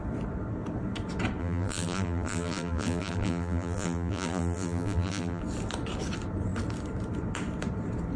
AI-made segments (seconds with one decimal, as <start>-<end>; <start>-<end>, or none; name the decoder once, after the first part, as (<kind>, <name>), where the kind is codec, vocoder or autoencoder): 1.4-5.4 (vocoder, BigVGAN v2)